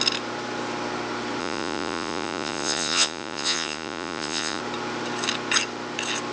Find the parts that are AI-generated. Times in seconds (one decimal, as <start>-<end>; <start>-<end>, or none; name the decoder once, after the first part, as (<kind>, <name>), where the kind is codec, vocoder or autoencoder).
1.4-4.6 (vocoder, Vocos)

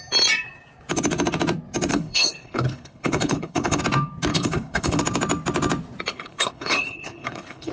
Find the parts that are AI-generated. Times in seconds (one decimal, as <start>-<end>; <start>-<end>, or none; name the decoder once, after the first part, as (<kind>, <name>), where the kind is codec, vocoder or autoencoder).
1.9-3.8 (codec, HILCodec); 4.3-5.0; 6.1-7.7

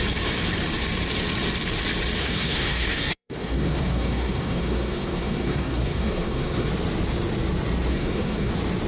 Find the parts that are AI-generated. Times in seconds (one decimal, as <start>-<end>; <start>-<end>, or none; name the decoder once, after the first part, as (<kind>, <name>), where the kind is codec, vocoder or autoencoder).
2.2-6.7 (codec, SNAC); 7.9-8.5

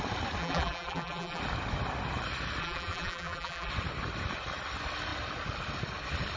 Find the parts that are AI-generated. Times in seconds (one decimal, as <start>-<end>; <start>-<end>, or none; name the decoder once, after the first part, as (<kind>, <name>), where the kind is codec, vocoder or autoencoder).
0.4-1.4 (vocoder, BigVGAN v2); 2.6-3.7